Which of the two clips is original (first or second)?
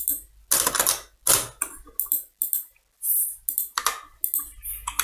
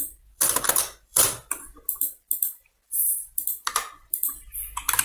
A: first